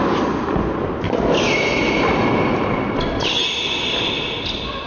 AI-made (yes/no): no